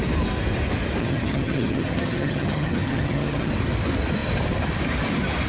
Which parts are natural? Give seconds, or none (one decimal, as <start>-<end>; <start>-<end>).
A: 0.0-1.0; 3.5-5.5